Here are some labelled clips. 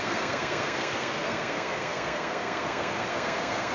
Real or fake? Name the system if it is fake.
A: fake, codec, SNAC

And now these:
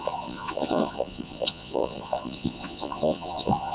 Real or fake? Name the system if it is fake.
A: fake, vocoder, Vocos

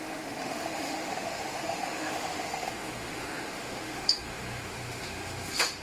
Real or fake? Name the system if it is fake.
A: fake, autoencoder, DAC-VAE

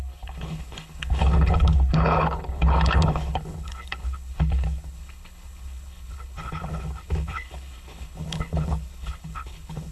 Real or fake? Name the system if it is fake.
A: fake, codec, HILCodec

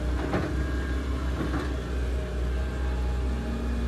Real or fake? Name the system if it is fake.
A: real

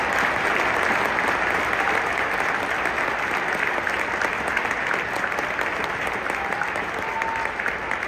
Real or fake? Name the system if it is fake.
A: real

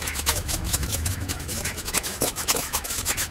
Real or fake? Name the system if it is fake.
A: fake, autoencoder, DAC-VAE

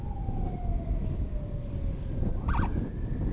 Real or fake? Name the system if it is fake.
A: real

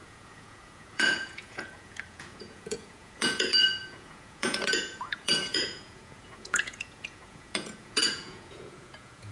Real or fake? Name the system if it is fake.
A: fake, vocoder, Vocos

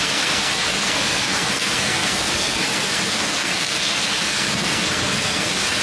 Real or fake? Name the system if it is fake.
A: fake, codec, SNAC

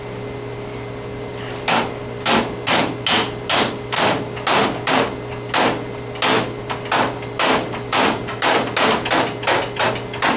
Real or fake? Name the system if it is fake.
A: real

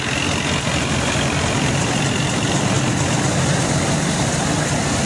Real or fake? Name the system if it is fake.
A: real